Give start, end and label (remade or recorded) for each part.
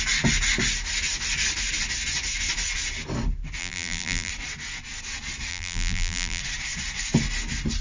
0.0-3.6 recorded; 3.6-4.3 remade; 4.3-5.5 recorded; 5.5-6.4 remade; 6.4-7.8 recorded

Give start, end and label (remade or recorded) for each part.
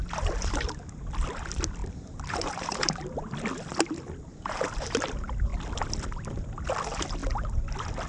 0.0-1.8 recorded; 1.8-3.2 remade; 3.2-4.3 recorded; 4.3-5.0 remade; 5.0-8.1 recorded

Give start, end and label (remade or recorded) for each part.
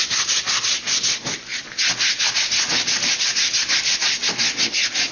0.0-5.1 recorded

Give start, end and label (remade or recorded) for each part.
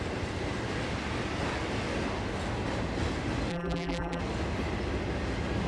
0.0-3.5 recorded; 3.5-4.2 remade; 4.2-5.7 recorded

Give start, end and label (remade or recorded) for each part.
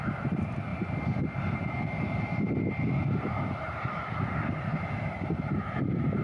0.0-0.7 remade; 0.7-3.9 recorded; 3.9-4.7 remade; 4.7-5.3 recorded; 5.3-6.2 remade